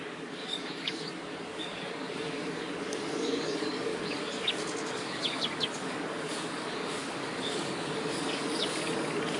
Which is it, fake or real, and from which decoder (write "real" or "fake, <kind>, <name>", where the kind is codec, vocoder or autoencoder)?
fake, codec, DAC